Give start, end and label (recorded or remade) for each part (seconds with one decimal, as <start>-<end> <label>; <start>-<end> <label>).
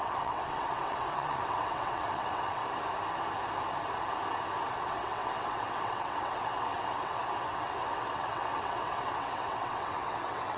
0.0-2.6 remade; 2.6-4.7 recorded; 4.7-10.6 remade